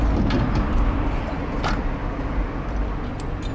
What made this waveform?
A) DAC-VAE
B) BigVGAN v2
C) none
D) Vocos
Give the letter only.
C